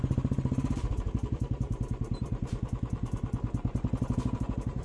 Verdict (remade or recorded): remade